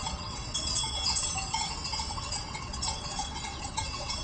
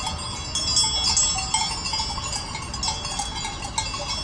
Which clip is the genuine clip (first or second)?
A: second